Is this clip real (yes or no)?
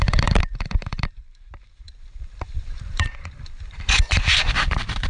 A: no